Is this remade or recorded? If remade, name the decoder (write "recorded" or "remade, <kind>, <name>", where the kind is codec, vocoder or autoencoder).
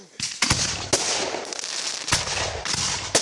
recorded